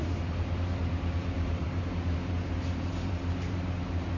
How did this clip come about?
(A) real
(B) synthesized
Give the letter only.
B